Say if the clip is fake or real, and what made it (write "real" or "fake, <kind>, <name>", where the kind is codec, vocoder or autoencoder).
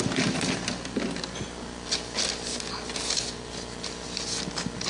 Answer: real